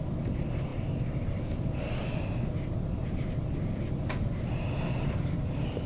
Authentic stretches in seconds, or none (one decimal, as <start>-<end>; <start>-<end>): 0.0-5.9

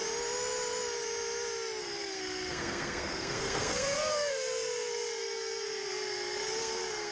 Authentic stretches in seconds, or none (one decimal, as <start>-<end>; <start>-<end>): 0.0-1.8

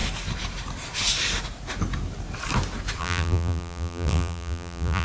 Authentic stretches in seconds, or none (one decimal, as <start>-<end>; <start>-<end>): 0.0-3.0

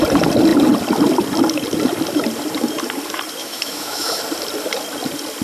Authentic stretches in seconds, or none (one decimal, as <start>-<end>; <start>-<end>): 0.0-3.4; 4.2-5.4

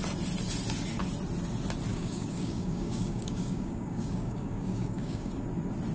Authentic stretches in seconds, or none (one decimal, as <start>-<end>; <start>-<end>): 0.0-1.9; 5.3-5.9

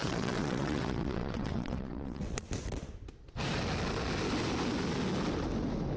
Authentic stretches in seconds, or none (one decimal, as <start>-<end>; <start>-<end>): 2.5-6.0